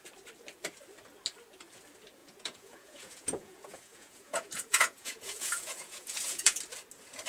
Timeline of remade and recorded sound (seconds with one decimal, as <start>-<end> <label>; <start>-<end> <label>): 0.0-2.2 recorded; 2.2-6.6 remade; 6.6-7.3 recorded